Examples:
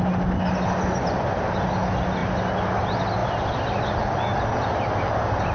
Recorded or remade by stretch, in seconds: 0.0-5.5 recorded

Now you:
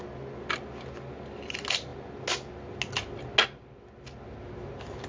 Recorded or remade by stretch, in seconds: 0.0-5.1 recorded